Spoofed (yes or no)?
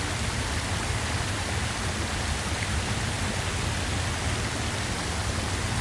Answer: no